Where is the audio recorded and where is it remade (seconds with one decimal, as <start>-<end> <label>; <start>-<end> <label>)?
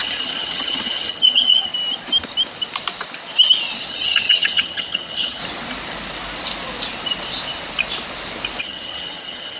0.0-1.7 remade; 1.7-3.9 recorded; 3.9-5.4 remade; 5.4-8.6 recorded; 8.6-9.6 remade